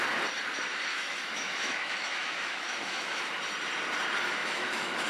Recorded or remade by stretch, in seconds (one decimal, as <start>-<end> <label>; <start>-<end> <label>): 0.0-0.9 recorded; 0.9-3.2 remade; 3.2-4.4 recorded; 4.4-5.1 remade